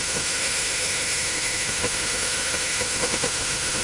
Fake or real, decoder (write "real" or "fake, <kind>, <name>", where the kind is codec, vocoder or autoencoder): fake, autoencoder, DAC-VAE